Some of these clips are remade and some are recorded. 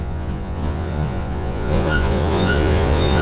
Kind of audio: remade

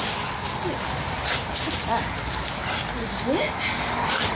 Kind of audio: recorded